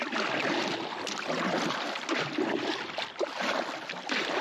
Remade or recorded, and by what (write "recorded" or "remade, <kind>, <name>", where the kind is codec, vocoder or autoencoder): recorded